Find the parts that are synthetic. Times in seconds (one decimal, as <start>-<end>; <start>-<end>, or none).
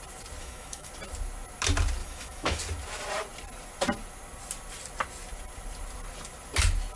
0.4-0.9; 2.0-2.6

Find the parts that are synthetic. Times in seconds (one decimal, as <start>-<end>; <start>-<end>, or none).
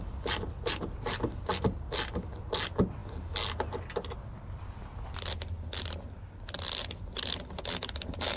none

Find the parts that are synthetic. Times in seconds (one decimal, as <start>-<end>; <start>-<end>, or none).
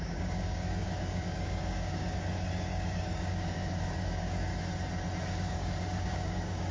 0.0-4.5; 5.3-6.7